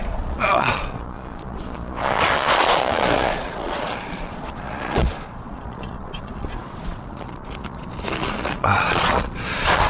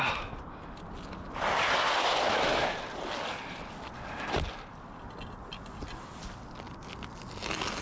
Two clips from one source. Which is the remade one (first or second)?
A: first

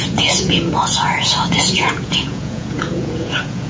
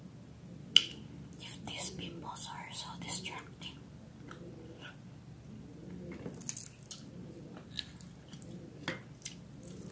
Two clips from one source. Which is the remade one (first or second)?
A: first